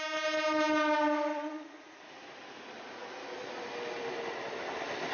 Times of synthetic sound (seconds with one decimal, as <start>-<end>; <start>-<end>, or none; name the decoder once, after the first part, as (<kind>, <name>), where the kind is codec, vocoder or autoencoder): 1.3-2.0 (vocoder, Vocos)